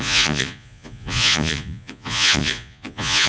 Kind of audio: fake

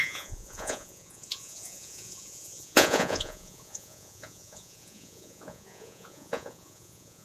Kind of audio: fake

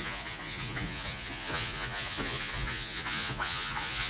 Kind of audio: fake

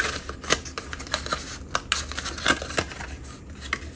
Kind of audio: real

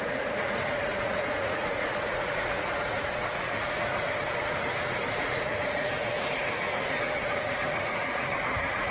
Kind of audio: fake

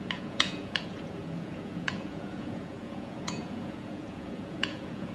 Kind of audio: fake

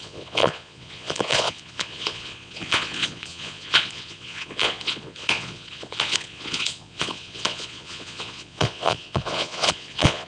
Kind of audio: fake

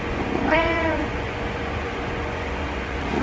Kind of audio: fake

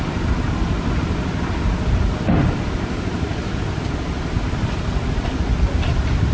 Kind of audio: real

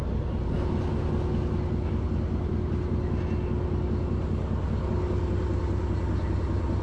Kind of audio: real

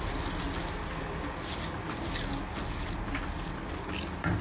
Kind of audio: real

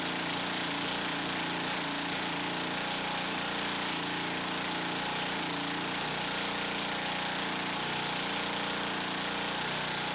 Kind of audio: real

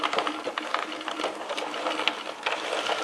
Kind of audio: real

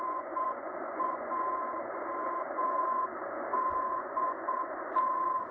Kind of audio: fake